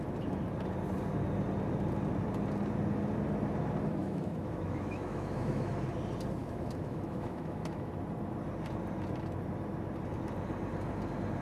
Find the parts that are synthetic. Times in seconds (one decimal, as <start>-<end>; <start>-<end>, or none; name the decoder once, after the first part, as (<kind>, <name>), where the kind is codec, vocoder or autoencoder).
4.0-5.7 (autoencoder, DAC-VAE); 6.4-7.9